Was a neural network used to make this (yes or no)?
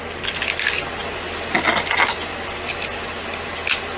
no